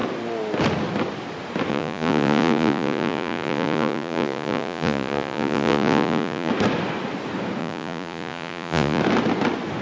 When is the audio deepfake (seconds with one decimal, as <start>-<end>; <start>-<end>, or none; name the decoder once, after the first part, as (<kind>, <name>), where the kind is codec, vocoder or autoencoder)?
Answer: 1.7-6.5 (vocoder, Vocos); 7.6-9.0